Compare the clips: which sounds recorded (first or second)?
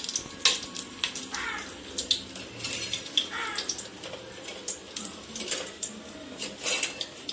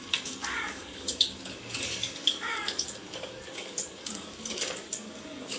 first